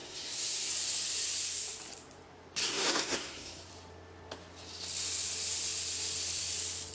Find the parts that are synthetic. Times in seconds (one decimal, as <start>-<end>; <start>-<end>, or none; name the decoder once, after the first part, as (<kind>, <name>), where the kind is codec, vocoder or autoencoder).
0.0-0.7 (codec, SNAC); 2.6-3.7